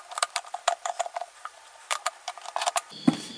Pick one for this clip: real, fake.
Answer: fake